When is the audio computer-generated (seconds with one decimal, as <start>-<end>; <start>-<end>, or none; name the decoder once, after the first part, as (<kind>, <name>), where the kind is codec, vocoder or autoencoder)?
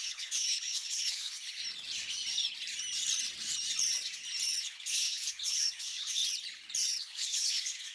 0.0-1.6 (codec, HILCodec); 4.6-6.2; 7.0-7.9